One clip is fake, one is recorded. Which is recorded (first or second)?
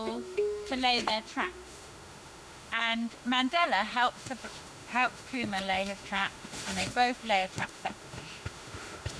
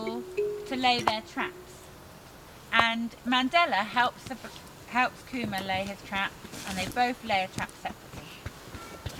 second